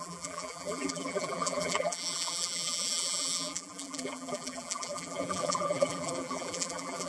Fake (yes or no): yes